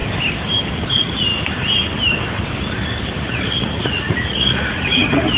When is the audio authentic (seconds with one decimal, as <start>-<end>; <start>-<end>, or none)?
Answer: 0.0-0.9; 1.3-3.2